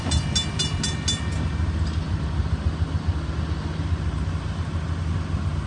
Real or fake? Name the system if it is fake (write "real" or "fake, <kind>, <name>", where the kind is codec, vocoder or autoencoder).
real